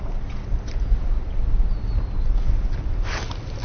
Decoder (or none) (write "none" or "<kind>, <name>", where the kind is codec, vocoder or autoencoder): none